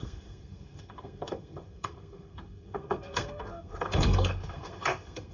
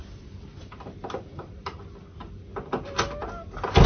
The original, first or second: second